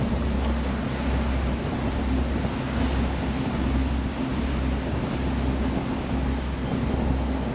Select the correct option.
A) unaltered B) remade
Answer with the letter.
A